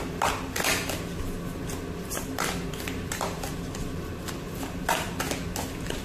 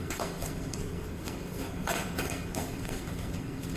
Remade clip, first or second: second